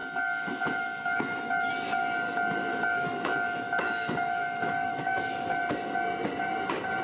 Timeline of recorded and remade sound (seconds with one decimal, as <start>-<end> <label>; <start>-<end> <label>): 0.0-1.7 remade; 1.7-2.7 recorded; 2.7-5.2 remade; 5.2-7.0 recorded